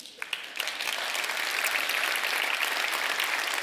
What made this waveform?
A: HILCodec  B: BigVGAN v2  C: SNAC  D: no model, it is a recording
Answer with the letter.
D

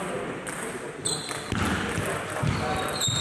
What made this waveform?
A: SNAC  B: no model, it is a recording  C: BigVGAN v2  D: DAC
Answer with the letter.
B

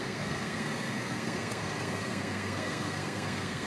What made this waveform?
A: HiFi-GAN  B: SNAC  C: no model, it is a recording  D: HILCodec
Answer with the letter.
B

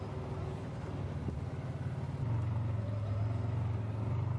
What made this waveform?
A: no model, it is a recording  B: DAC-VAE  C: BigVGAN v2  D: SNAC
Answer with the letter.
A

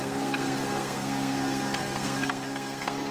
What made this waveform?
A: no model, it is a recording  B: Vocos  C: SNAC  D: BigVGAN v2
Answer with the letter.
C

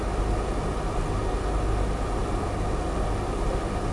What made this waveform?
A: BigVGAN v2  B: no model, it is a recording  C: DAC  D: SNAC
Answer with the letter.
B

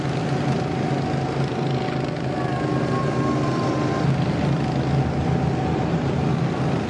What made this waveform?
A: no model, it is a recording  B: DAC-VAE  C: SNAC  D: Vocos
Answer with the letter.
A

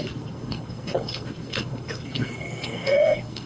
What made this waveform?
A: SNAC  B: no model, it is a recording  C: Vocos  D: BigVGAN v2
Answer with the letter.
A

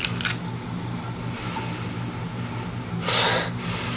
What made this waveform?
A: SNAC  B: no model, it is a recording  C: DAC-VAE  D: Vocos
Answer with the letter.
B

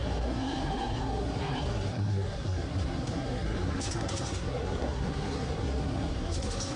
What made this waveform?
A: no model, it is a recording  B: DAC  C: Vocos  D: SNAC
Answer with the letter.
D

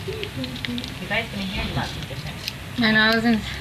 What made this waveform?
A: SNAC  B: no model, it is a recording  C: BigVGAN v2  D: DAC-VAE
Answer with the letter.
B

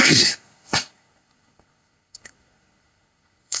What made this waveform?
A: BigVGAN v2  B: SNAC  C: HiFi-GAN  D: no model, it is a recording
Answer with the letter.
B